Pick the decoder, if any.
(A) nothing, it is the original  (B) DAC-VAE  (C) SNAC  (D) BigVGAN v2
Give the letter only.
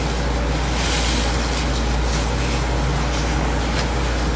A